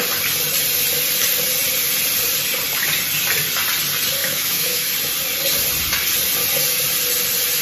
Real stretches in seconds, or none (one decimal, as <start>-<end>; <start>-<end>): 0.0-4.2; 4.9-7.6